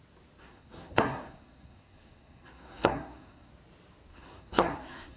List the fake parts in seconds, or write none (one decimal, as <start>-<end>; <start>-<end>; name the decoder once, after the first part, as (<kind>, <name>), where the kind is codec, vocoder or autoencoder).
0.4-3.5 (codec, SNAC); 4.1-5.2